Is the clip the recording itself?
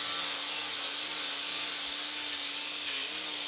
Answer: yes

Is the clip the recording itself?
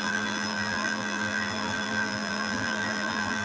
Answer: no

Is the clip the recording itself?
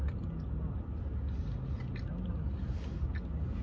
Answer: yes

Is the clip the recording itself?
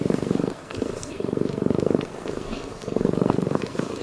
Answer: no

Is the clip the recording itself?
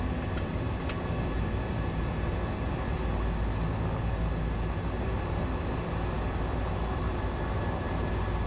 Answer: yes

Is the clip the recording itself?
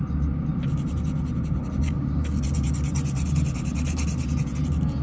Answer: yes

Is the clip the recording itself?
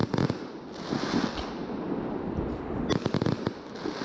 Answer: yes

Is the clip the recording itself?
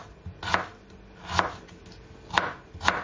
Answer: yes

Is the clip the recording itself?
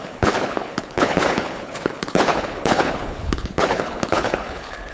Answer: no